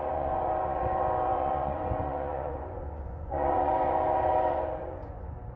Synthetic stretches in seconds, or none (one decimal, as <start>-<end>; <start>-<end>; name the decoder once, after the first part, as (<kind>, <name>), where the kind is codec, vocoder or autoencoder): 0.0-5.6 (vocoder, Vocos)